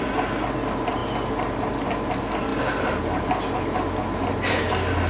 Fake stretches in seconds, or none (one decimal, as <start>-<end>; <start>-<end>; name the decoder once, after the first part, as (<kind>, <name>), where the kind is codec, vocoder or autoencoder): none